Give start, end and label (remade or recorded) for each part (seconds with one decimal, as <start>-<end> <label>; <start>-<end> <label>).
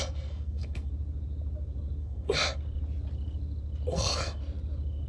0.0-0.9 remade; 0.9-2.0 recorded; 2.0-2.6 remade; 2.6-3.9 recorded; 3.9-4.4 remade; 4.4-5.1 recorded